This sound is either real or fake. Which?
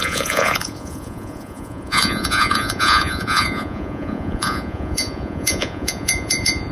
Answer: fake